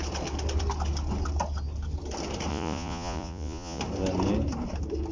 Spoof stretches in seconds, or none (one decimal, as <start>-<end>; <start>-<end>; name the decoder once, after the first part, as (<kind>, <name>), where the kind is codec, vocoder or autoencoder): 2.5-3.8 (vocoder, Vocos)